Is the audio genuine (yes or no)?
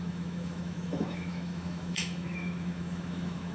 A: no